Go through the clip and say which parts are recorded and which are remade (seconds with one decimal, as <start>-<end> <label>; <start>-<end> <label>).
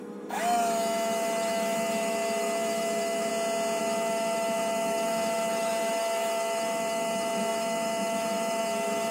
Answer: 0.0-3.3 remade; 3.3-3.8 recorded; 3.8-9.1 remade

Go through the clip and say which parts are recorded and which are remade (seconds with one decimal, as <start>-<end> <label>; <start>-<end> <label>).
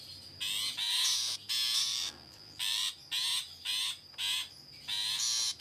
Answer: 0.0-1.9 recorded; 1.9-2.9 remade; 2.9-5.6 recorded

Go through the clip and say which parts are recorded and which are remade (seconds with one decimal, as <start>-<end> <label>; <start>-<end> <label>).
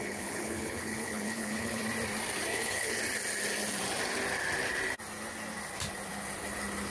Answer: 0.0-1.8 remade; 1.8-2.5 recorded; 2.5-3.0 remade; 3.0-6.9 recorded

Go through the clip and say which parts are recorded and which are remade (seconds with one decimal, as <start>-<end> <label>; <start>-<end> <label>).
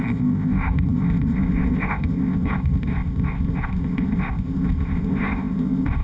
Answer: 0.0-6.0 remade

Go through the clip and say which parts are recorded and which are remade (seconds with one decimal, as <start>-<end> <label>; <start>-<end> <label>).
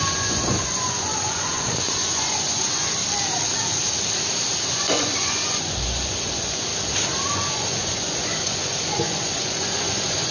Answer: 0.0-3.0 remade; 3.0-4.7 recorded; 4.7-6.7 remade; 6.7-7.3 recorded; 7.3-10.3 remade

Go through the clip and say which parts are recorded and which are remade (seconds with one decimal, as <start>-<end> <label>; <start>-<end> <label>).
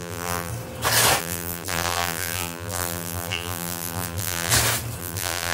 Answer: 0.0-0.5 remade; 0.5-1.2 recorded; 1.2-4.5 remade; 4.5-5.0 recorded; 5.0-5.5 remade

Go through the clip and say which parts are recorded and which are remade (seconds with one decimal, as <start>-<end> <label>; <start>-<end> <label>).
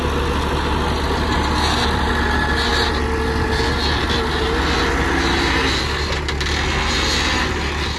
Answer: 0.0-8.0 recorded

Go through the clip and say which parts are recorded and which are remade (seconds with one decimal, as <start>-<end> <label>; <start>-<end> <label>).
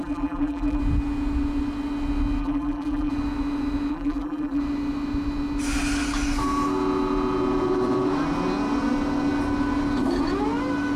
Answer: 0.0-0.8 remade; 0.8-2.4 recorded; 2.4-3.1 remade; 3.1-3.9 recorded; 3.9-4.6 remade; 4.6-11.0 recorded